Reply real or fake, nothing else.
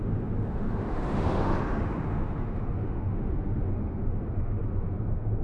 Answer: fake